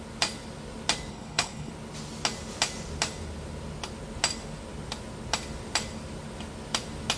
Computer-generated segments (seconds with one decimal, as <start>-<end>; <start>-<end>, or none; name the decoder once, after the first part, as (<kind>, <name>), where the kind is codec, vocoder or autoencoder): 1.1-1.7 (codec, HILCodec)